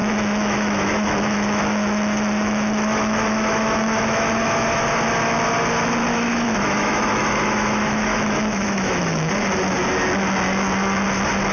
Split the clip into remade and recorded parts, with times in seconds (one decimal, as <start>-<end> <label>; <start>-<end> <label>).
0.0-4.8 remade; 4.8-6.1 recorded; 6.1-9.3 remade; 9.3-11.5 recorded